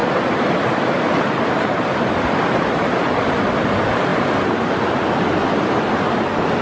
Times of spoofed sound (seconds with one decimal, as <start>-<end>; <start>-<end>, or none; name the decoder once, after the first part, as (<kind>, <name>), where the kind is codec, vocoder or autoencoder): 0.0-2.9 (vocoder, BigVGAN v2)